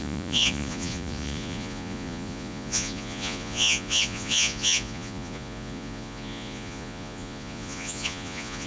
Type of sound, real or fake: fake